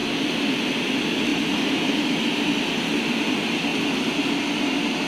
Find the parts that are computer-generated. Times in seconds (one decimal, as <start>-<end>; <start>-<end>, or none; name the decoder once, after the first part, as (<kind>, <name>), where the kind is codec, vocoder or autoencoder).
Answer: none